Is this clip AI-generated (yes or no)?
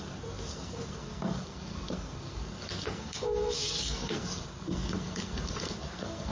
yes